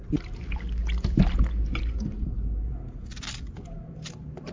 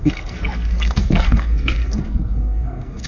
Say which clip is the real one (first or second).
first